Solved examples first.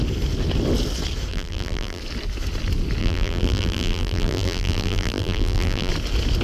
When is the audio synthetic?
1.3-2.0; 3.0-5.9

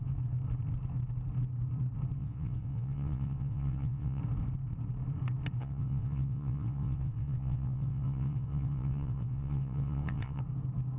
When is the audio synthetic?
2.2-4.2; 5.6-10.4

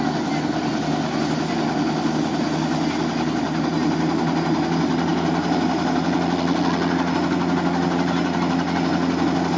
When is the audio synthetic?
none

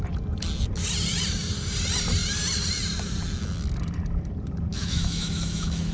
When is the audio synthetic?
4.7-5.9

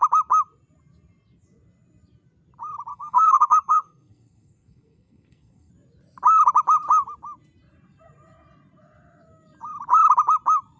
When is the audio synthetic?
2.9-5.7